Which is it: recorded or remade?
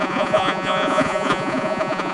remade